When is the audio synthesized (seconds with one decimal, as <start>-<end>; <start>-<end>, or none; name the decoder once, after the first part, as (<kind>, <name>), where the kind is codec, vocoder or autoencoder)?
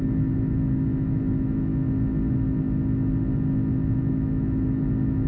0.0-1.7 (autoencoder, DAC-VAE); 4.1-5.3